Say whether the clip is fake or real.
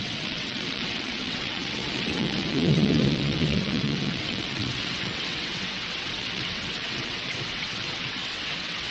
fake